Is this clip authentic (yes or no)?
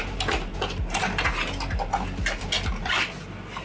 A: yes